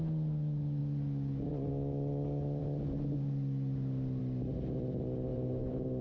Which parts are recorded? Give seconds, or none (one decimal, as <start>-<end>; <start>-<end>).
0.0-5.3